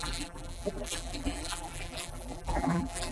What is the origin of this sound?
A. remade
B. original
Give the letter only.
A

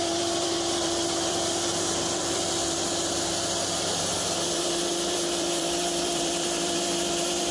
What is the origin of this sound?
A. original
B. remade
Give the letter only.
B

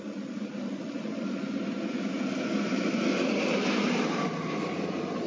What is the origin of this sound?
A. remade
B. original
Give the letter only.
B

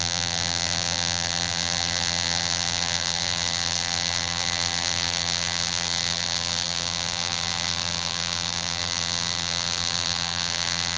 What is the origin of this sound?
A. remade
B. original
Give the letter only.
A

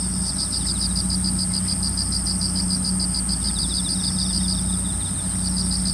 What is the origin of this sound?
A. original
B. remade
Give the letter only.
A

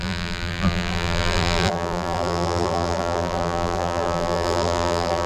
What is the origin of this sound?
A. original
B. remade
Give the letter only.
B